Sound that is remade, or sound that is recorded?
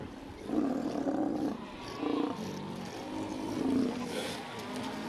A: recorded